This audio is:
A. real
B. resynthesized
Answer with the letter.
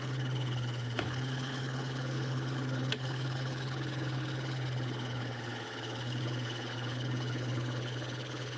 B